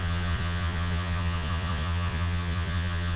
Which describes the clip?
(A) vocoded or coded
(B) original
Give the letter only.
A